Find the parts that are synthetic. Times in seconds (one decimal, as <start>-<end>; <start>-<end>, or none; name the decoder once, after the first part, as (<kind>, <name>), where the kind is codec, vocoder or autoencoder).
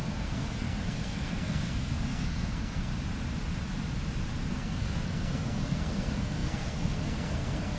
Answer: 0.0-2.9 (codec, SNAC); 4.5-7.8